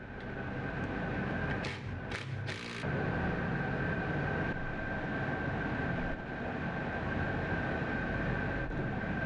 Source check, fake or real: real